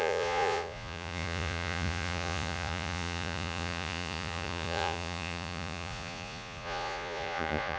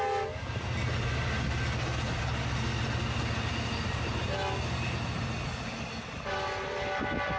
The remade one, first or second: first